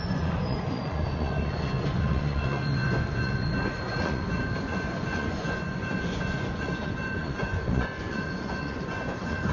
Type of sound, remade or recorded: remade